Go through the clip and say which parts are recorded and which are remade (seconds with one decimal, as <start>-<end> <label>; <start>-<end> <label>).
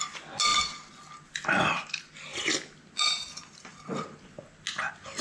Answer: 0.0-5.2 recorded